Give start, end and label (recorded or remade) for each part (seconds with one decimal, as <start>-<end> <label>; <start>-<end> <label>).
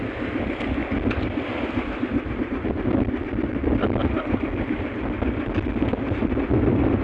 0.0-2.1 recorded; 2.1-2.9 remade; 2.9-7.0 recorded